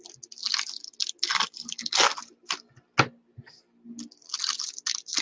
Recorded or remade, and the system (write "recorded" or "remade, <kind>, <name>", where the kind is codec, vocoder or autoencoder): recorded